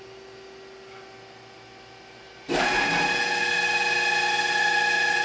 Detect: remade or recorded recorded